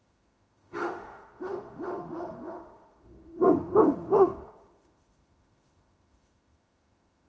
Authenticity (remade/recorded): remade